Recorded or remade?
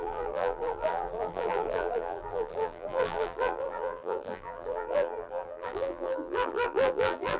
remade